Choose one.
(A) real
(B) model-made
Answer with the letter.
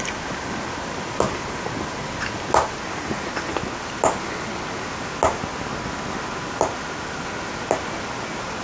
A